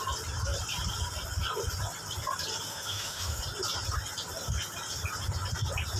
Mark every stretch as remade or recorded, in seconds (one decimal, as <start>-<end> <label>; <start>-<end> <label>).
0.0-2.7 recorded; 2.7-3.4 remade; 3.4-6.0 recorded